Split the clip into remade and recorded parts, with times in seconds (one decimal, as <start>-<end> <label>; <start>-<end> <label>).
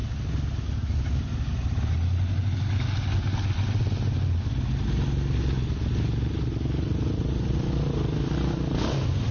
0.0-9.3 recorded